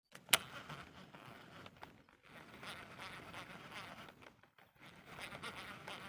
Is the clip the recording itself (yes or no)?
yes